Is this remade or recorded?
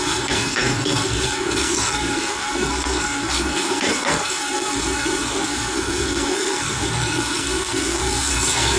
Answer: remade